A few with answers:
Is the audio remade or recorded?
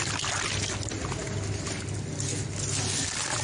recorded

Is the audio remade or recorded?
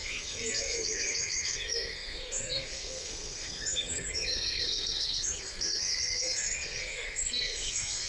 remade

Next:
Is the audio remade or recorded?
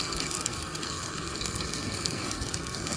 remade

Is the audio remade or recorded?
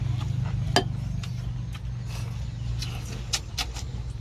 recorded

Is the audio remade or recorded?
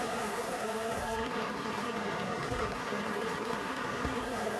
remade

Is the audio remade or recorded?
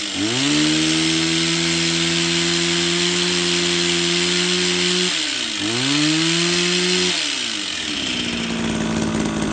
recorded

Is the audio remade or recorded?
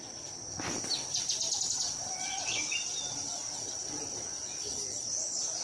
recorded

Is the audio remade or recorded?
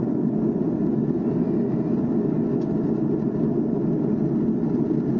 recorded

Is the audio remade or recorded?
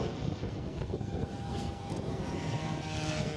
remade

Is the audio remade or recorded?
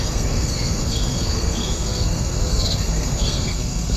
remade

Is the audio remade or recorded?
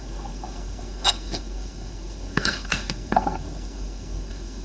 remade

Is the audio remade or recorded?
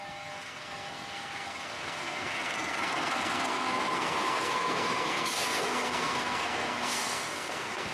remade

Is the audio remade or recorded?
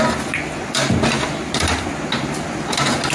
recorded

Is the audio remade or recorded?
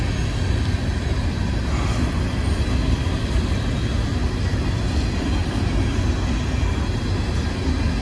recorded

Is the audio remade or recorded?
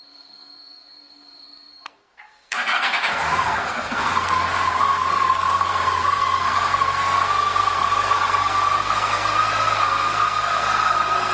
remade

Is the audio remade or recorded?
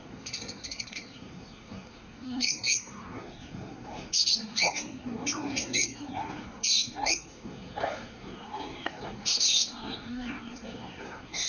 remade